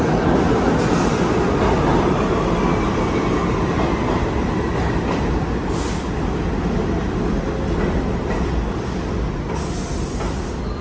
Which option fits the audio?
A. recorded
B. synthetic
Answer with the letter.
A